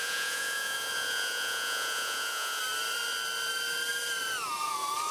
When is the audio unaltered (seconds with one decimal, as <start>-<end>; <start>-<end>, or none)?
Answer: 2.6-5.1